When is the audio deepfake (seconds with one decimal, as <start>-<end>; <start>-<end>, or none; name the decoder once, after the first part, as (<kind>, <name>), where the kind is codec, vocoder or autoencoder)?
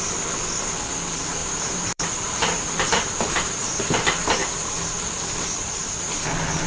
1.4-3.8 (vocoder, BigVGAN v2); 4.4-6.1